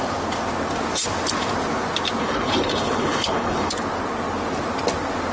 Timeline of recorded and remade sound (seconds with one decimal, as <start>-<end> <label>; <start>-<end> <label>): 0.0-2.2 recorded; 2.2-3.7 remade; 3.7-5.3 recorded

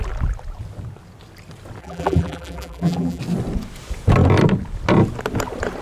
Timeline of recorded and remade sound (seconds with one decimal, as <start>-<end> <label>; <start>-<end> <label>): 0.0-1.8 recorded; 1.8-3.2 remade; 3.2-5.8 recorded

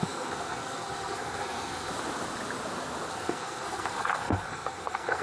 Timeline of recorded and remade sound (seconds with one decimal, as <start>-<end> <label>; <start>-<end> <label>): 0.0-1.9 remade; 1.9-3.1 recorded; 3.1-5.2 remade

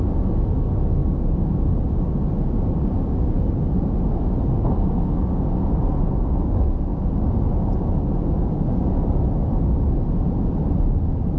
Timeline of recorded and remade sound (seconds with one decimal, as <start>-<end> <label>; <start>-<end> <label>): 0.0-11.4 recorded

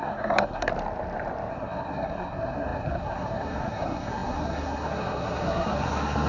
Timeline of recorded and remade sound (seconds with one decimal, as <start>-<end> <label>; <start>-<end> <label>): 0.0-0.7 remade; 0.7-1.5 recorded; 1.5-6.3 remade

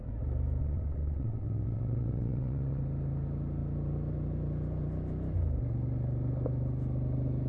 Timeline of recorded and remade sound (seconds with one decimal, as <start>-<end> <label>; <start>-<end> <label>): 0.0-0.6 recorded; 0.6-2.8 remade; 2.8-7.5 recorded